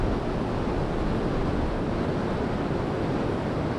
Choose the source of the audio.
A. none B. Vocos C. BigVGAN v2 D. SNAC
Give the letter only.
A